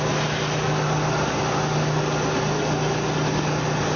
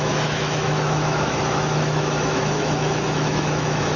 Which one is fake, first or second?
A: second